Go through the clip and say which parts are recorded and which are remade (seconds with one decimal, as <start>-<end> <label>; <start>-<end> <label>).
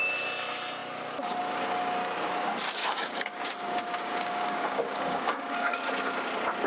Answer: 0.0-2.8 recorded; 2.8-5.9 remade; 5.9-6.7 recorded